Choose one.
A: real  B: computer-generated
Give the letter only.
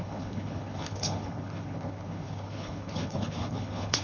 B